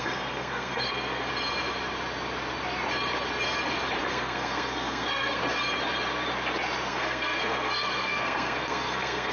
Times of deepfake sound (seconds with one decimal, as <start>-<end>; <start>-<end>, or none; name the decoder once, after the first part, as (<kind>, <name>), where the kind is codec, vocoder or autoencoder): 0.0-1.3 (codec, SNAC); 4.0-5.4; 6.9-9.3